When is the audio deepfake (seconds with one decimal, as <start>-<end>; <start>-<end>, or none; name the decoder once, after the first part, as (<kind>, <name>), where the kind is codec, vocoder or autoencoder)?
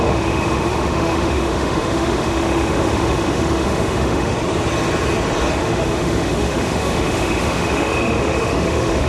0.0-4.3 (autoencoder, DAC-VAE); 5.6-9.1